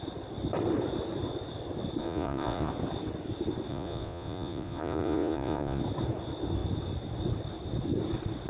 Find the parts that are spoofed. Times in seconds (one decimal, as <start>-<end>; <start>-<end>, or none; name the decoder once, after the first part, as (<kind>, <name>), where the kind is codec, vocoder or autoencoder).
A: 2.0-2.7 (vocoder, Vocos); 3.7-5.8